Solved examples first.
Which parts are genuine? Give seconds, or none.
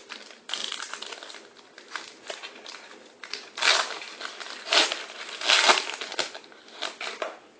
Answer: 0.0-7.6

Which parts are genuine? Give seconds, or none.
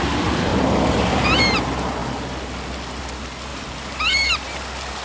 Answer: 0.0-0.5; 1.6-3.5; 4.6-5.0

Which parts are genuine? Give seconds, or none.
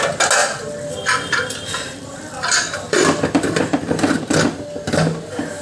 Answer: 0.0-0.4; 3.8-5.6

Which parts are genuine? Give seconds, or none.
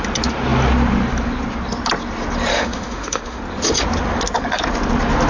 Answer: 0.0-2.5; 3.4-5.3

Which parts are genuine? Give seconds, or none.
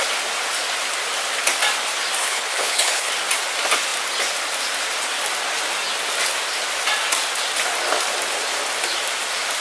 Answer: 0.0-2.2; 3.1-9.6